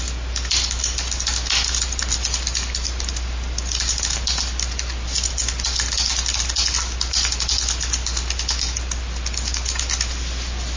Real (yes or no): yes